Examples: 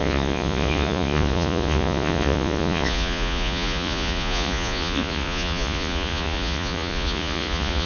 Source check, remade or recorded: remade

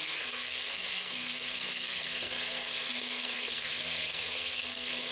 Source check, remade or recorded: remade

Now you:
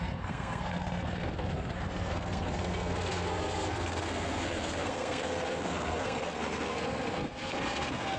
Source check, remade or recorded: remade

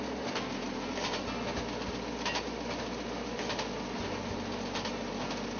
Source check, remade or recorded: recorded